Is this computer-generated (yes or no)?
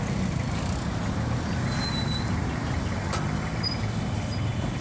no